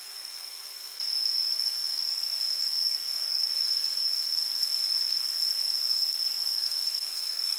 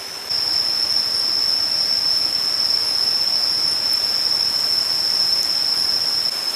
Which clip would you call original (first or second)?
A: second